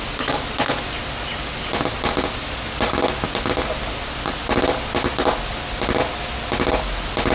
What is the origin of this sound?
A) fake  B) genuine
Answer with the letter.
B